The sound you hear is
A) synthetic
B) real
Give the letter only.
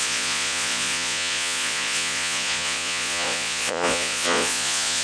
A